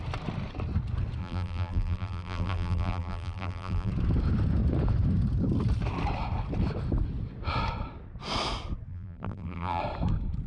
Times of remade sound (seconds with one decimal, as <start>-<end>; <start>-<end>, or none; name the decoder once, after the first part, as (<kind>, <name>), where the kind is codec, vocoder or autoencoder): 1.2-3.9 (vocoder, BigVGAN v2); 8.9-9.8